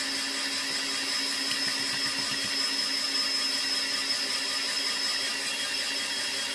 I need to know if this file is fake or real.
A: fake